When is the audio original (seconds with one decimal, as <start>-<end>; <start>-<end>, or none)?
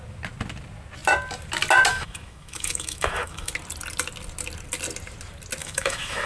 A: 0.0-1.9; 3.5-5.6